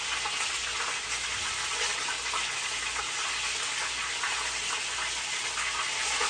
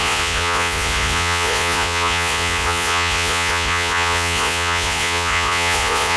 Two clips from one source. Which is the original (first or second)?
first